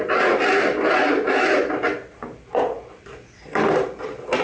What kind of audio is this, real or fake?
real